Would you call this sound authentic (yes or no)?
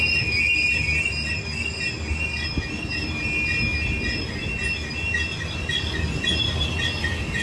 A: yes